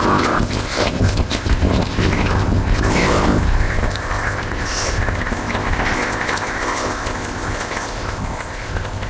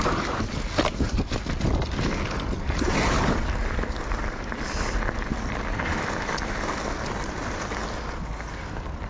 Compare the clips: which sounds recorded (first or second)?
second